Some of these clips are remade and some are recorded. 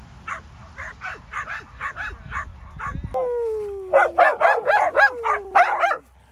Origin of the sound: recorded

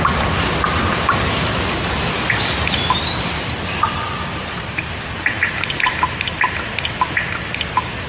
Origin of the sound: remade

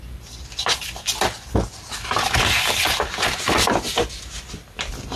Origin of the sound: recorded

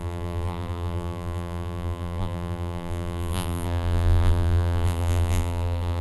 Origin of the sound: remade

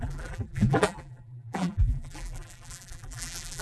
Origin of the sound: remade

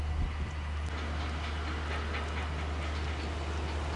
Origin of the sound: recorded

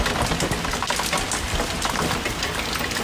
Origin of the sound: recorded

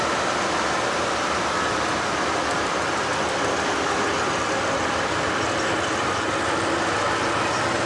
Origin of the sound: recorded